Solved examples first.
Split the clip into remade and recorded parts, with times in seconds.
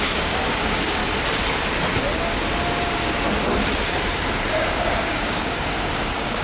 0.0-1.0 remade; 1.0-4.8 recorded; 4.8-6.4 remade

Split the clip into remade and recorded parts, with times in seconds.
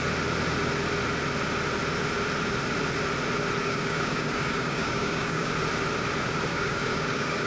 0.0-3.6 recorded; 3.6-5.5 remade; 5.5-6.5 recorded; 6.5-7.5 remade